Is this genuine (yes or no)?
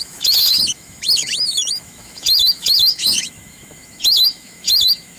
no